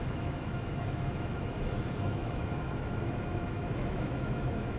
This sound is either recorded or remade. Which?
remade